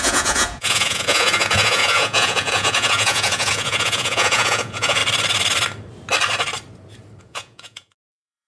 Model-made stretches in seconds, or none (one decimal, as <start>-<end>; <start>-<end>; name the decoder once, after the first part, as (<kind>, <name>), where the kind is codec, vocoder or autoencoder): 0.0-5.0 (vocoder, Vocos); 7.2-8.5